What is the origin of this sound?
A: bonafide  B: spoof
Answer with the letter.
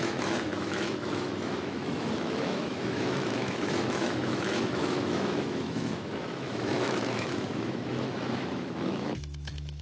B